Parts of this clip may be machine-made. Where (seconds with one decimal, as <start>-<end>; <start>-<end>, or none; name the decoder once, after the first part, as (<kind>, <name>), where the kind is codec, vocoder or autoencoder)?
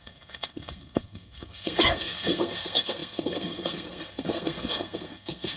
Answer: 0.0-5.6 (codec, SNAC)